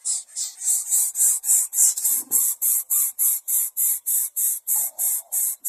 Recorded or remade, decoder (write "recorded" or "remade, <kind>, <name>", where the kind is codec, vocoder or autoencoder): remade, vocoder, BigVGAN v2